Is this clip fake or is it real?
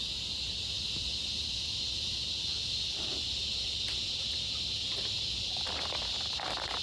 real